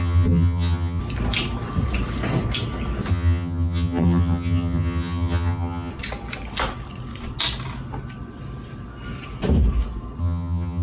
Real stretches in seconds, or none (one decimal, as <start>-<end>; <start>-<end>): 1.0-3.1; 5.9-10.2